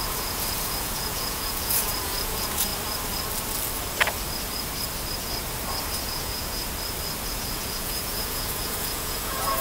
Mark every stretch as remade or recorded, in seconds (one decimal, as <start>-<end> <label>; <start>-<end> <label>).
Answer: 0.0-2.7 remade; 2.7-6.0 recorded; 6.0-6.6 remade; 6.6-7.3 recorded; 7.3-9.6 remade